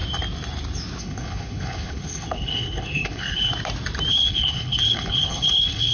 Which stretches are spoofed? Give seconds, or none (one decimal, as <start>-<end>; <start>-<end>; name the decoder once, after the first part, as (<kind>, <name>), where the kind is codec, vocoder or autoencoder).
1.0-3.5 (codec, HILCodec); 4.1-5.9